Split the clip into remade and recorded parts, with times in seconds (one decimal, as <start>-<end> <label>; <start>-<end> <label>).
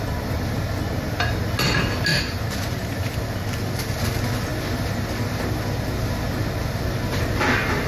0.0-2.1 recorded; 2.1-4.0 remade; 4.0-7.9 recorded